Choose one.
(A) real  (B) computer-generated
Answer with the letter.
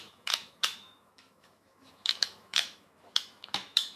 B